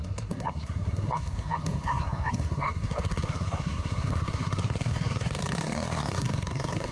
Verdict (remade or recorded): remade